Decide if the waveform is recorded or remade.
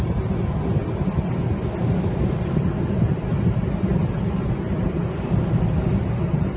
recorded